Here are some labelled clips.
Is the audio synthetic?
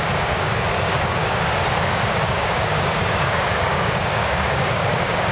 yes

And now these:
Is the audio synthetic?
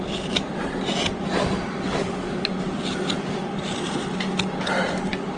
no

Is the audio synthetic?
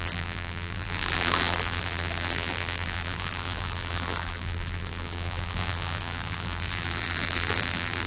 yes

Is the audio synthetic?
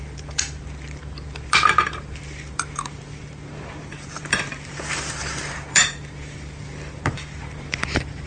yes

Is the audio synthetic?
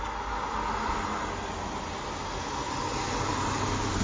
no